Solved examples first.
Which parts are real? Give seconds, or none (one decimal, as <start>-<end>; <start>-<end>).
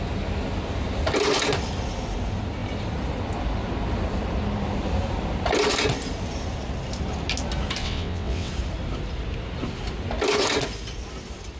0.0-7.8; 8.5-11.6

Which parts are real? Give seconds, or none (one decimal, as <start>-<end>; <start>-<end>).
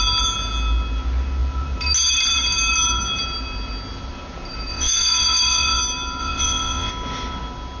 0.0-4.7; 5.8-6.2; 6.9-7.8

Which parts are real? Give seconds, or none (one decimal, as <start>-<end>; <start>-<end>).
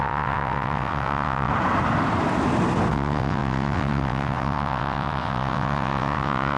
1.5-2.9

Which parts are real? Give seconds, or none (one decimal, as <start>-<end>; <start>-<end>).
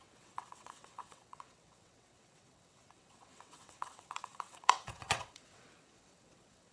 none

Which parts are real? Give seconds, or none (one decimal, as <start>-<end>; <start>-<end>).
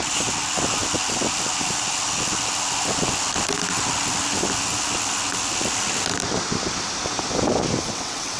0.0-7.8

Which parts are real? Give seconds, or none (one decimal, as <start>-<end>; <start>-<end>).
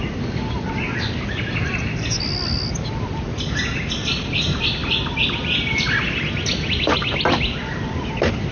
0.0-8.5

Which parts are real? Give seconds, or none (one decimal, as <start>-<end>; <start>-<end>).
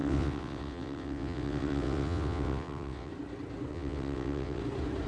3.1-3.7; 4.6-5.1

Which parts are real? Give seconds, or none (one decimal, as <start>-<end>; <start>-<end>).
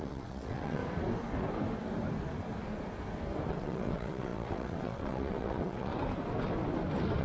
0.8-3.5; 5.9-7.2